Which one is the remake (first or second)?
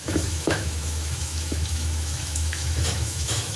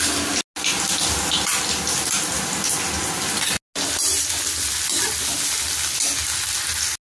first